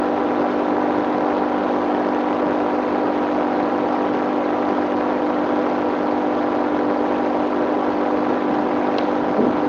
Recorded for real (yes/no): yes